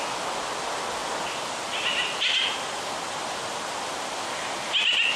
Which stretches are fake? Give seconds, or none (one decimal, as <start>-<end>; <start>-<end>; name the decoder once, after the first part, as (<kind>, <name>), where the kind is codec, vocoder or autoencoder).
none